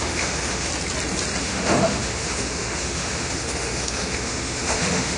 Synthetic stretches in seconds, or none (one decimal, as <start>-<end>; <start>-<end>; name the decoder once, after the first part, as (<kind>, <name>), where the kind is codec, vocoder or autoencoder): 0.0-0.7 (autoencoder, DAC-VAE); 1.4-5.2